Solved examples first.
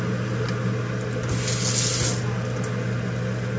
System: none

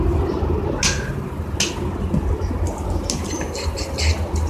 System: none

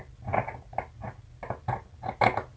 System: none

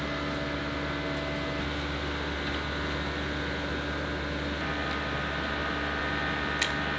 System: none